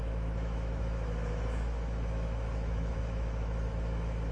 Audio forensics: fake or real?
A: fake